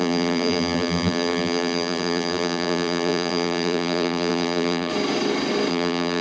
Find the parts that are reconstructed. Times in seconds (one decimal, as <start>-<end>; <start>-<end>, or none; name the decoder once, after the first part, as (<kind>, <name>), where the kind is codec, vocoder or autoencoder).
0.0-4.9 (vocoder, BigVGAN v2); 5.7-6.2